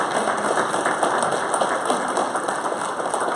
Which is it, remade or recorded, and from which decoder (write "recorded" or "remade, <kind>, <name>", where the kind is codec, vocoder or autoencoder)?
recorded